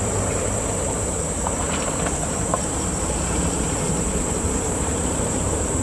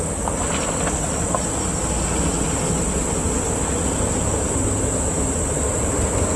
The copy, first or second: first